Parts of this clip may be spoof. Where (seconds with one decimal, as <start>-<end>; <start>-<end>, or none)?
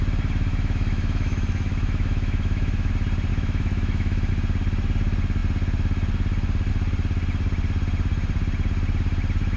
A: 0.5-2.9; 3.3-4.3